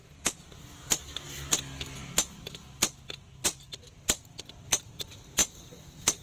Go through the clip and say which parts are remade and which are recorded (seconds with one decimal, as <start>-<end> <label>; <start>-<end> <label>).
0.0-1.1 remade; 1.1-6.2 recorded